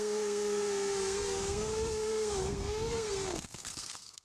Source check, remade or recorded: remade